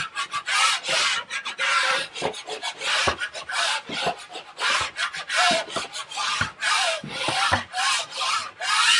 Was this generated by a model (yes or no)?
no